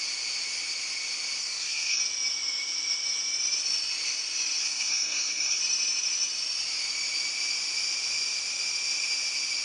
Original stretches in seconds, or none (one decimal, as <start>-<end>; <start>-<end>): 0.0-1.4; 2.0-4.6; 5.6-9.6